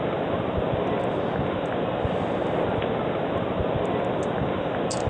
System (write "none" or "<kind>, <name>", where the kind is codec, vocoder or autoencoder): none